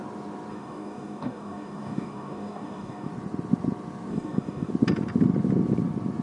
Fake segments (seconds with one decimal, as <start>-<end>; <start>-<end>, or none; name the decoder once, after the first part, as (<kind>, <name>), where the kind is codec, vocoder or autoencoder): 0.5-3.1 (codec, DAC); 4.1-4.7